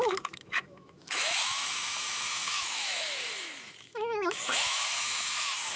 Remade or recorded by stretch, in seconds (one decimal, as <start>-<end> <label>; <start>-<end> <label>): 0.0-5.8 remade